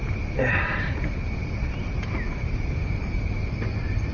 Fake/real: fake